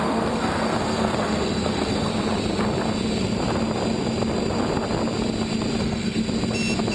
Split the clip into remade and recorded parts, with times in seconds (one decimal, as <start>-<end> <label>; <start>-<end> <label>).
0.0-2.1 remade; 2.1-5.8 recorded; 5.8-6.2 remade; 6.2-6.9 recorded

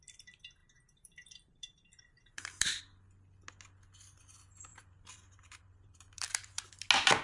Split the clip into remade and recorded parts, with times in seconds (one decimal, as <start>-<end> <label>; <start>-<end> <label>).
0.0-0.6 recorded; 0.6-2.8 remade; 2.8-4.7 recorded; 4.7-6.7 remade; 6.7-7.2 recorded

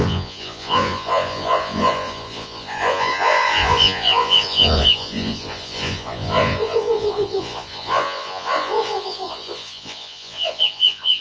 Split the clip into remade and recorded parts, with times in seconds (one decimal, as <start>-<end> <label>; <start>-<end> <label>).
0.0-11.2 remade

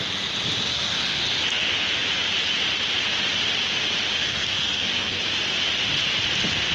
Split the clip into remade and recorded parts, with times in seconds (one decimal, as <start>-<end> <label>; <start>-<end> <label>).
0.0-0.7 recorded; 0.7-1.2 remade; 1.2-4.2 recorded; 4.2-5.2 remade; 5.2-6.7 recorded

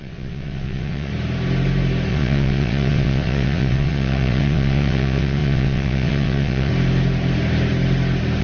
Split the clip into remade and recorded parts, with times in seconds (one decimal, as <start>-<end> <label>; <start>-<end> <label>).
0.0-1.1 remade; 1.1-2.1 recorded; 2.1-6.7 remade; 6.7-8.4 recorded

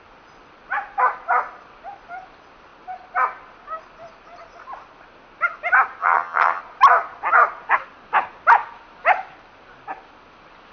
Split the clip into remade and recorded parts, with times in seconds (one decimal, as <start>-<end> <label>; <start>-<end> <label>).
0.0-6.0 recorded; 6.0-6.6 remade; 6.6-10.7 recorded